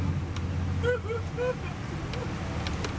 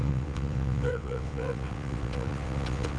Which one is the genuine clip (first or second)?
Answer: first